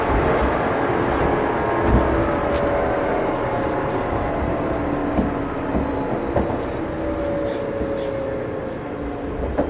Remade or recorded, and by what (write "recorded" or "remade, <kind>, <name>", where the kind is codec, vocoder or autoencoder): recorded